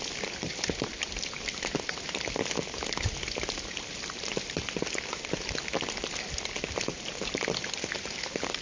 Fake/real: real